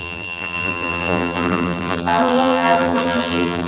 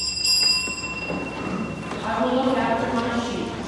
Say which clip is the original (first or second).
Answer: second